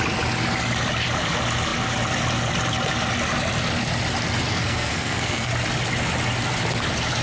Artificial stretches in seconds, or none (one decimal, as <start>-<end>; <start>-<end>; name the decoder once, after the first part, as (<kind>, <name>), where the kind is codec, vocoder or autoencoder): 4.5-5.5 (codec, SNAC)